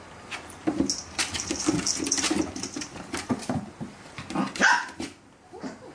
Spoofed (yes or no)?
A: no